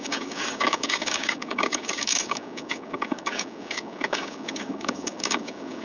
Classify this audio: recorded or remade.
remade